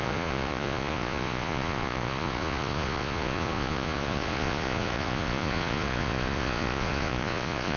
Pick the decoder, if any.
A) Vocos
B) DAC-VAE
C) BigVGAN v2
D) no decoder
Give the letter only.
A